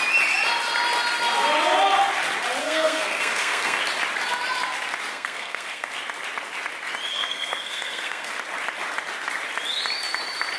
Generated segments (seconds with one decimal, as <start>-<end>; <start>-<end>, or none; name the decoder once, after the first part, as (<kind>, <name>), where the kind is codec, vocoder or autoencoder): 2.6-3.8 (codec, SNAC); 5.1-5.9; 7.1-8.3